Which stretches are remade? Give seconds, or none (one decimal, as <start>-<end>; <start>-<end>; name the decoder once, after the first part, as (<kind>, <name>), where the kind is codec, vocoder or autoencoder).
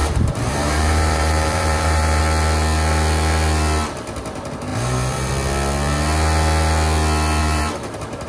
0.0-2.2 (vocoder, BigVGAN v2); 4.7-5.3; 7.4-8.3